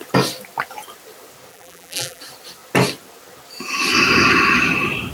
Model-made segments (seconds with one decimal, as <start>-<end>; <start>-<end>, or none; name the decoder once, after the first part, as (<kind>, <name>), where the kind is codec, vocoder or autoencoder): 1.5-2.2 (vocoder, BigVGAN v2)